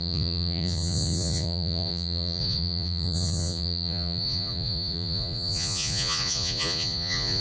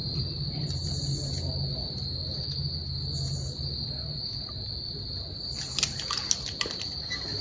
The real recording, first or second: second